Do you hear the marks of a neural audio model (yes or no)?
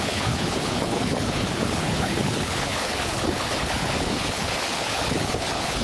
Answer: yes